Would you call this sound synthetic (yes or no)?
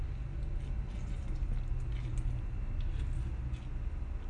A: no